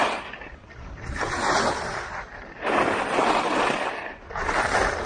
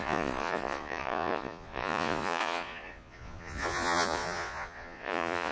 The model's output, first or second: second